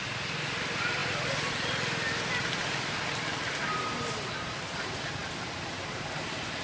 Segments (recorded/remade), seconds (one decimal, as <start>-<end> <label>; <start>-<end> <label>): 0.0-6.6 recorded